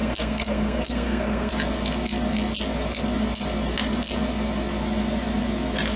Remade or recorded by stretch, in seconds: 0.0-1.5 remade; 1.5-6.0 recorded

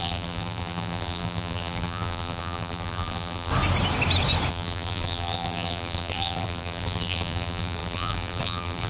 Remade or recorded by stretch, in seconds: 0.0-3.5 remade; 3.5-4.5 recorded; 4.5-8.9 remade